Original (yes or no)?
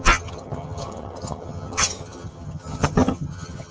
no